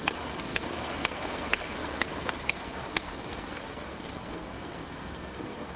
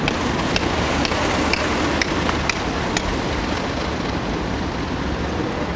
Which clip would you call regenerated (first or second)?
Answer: first